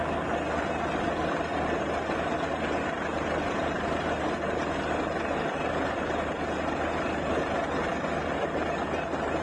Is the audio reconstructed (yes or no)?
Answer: no